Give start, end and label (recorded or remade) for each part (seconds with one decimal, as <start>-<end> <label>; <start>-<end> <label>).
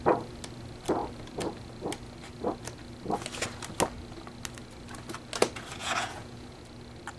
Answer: 0.0-5.8 recorded; 5.8-6.6 remade; 6.6-7.2 recorded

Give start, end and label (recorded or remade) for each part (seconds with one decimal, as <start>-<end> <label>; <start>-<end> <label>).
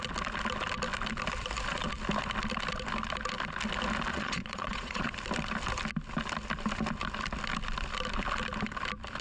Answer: 0.0-4.1 recorded; 4.1-5.1 remade; 5.1-9.2 recorded